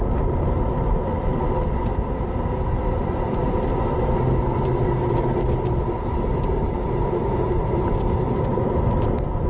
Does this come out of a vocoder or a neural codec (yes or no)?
no